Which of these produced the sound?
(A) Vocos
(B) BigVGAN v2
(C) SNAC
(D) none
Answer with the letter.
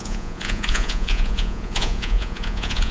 A